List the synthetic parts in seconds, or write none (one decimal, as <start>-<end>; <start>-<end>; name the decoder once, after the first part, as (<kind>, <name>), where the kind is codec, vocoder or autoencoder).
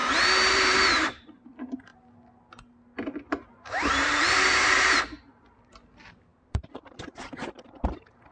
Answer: 0.5-1.9 (vocoder, BigVGAN v2); 3.6-8.3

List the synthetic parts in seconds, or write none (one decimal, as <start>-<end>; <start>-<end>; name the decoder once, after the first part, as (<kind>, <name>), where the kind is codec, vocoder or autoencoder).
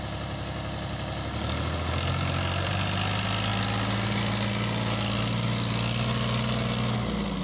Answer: none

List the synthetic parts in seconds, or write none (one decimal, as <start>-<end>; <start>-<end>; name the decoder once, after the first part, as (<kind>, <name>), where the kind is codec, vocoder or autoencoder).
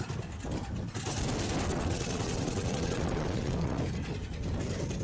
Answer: 1.7-3.8 (vocoder, WaveNeXt)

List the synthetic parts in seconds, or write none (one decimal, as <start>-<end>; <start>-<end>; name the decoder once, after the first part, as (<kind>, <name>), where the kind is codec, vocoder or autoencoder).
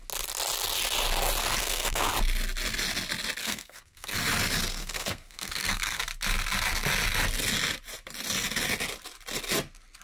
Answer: 1.6-2.1 (codec, SNAC); 3.4-4.2; 4.8-6.0